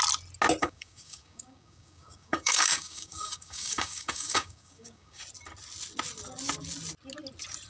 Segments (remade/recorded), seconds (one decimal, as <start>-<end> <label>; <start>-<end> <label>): 0.0-0.6 recorded; 0.6-5.2 remade; 5.2-7.7 recorded